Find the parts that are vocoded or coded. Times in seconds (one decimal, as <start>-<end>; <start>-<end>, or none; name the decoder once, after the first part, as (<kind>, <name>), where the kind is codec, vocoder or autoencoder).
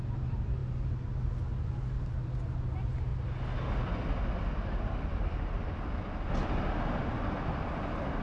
none